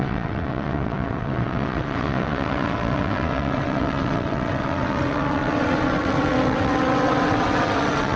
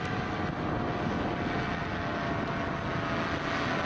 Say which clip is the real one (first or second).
second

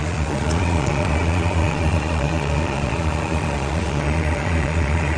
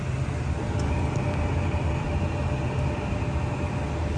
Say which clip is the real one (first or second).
second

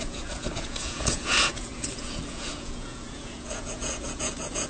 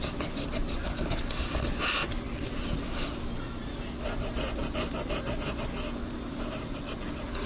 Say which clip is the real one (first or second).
second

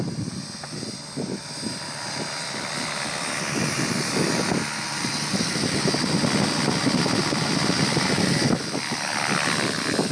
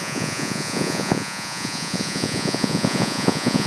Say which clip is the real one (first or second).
first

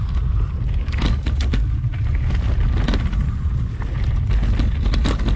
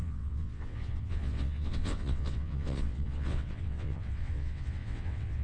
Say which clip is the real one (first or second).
first